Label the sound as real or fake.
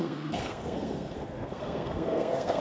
fake